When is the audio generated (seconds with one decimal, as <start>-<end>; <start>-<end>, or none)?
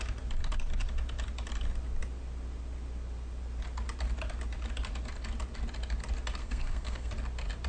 6.4-7.1